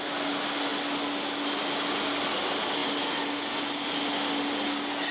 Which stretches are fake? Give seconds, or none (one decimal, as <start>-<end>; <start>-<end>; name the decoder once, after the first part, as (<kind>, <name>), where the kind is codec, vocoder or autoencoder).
none